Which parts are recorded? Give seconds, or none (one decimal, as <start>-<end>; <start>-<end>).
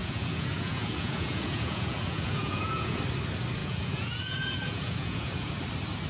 3.0-3.6; 5.6-6.1